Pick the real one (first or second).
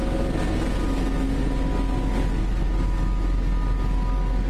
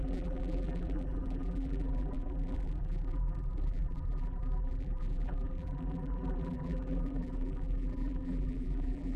first